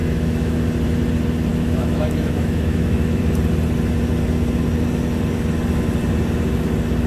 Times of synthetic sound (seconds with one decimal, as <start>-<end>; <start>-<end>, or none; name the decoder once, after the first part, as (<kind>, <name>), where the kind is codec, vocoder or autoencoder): 0.0-0.6 (autoencoder, DAC-VAE); 1.5-3.2